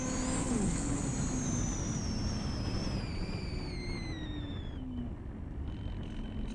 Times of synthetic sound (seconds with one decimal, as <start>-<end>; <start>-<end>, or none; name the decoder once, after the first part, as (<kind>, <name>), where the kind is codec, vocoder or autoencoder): 0.4-1.0 (codec, HILCodec)